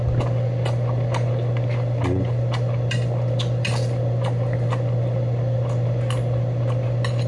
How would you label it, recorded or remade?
recorded